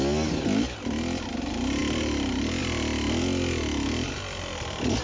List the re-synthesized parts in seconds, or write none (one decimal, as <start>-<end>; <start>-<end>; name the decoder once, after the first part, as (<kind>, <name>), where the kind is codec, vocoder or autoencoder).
none